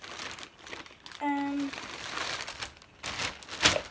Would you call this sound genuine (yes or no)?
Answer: yes